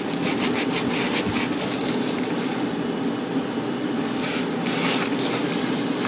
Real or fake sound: real